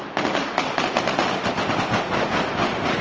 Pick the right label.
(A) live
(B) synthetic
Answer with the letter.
B